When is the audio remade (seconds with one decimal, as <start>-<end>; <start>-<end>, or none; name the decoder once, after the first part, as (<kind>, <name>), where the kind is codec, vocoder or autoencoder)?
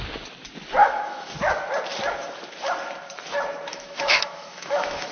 0.8-1.3 (autoencoder, DAC-VAE); 3.7-5.1